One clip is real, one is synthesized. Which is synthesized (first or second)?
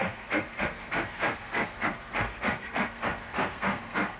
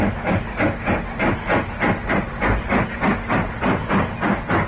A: first